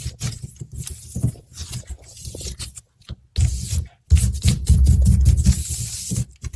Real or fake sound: real